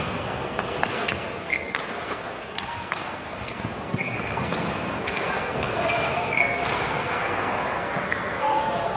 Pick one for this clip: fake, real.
fake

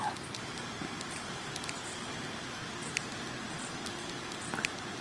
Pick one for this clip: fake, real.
real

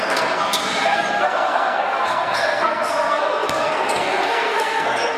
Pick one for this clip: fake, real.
fake